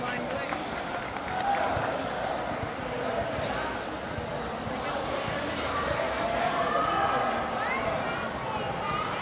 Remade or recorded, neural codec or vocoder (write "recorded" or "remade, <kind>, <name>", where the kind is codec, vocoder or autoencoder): recorded